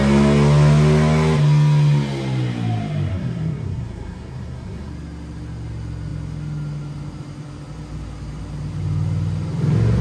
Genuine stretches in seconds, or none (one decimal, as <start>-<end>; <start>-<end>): 0.0-3.1; 4.9-10.0